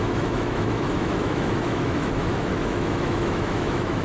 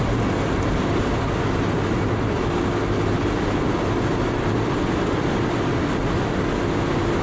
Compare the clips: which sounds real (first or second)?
second